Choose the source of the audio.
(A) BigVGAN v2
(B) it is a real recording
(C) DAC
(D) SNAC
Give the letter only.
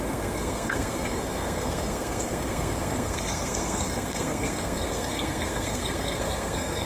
D